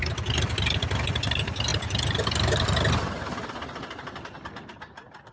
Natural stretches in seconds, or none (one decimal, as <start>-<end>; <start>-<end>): 0.0-5.3